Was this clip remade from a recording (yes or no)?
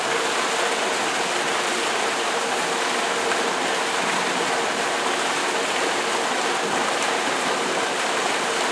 no